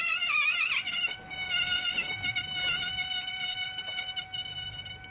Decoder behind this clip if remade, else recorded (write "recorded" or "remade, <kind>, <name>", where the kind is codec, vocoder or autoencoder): remade, vocoder, BigVGAN v2